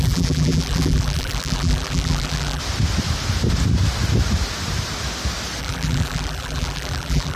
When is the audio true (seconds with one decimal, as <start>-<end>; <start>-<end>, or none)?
2.6-5.6

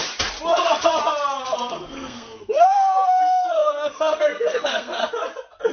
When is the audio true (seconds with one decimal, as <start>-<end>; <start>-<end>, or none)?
0.0-1.4; 5.0-5.7

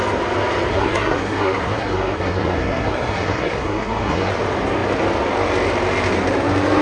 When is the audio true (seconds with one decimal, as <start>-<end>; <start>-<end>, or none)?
0.0-0.7; 4.3-6.8

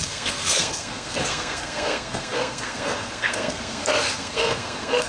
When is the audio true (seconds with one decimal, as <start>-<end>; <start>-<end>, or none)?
none

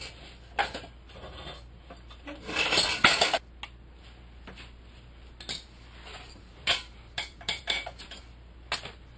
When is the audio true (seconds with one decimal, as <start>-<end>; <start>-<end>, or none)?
0.0-6.1; 8.2-9.2

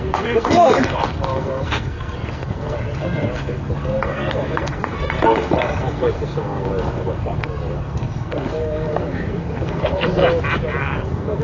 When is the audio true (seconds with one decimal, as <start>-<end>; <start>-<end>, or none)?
10.2-10.8

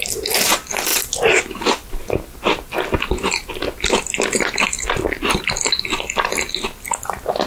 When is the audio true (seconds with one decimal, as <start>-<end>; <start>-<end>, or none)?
0.0-7.5